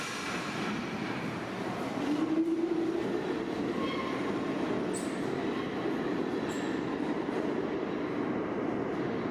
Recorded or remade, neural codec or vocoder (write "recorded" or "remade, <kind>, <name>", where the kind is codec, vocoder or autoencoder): recorded